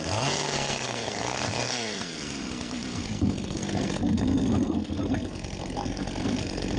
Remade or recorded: remade